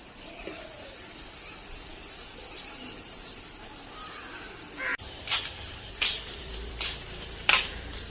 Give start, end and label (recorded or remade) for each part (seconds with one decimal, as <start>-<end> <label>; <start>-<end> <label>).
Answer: 0.0-4.9 recorded; 4.9-8.1 remade